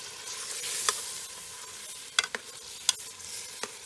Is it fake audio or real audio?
real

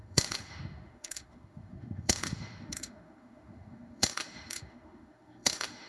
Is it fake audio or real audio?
fake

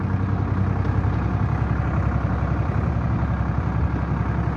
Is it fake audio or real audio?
real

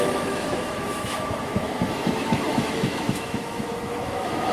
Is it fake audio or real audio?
fake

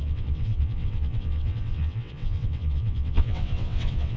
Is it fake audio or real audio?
fake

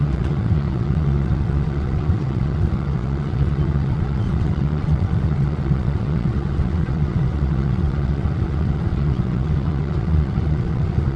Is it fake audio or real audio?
fake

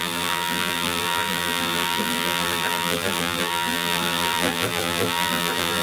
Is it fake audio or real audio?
fake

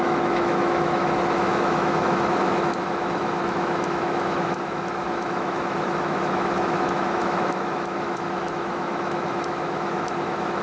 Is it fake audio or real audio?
fake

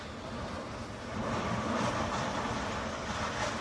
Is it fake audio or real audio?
real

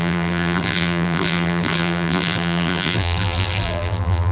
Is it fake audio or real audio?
fake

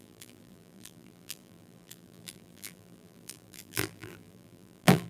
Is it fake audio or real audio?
fake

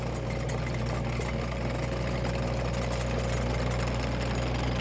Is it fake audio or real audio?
real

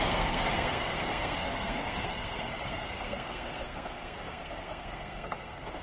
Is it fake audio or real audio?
fake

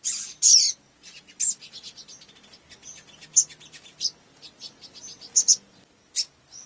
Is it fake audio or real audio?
real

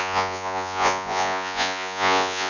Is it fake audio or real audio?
fake